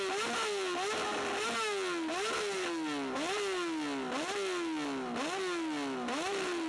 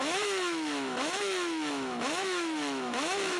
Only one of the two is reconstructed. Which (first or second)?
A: second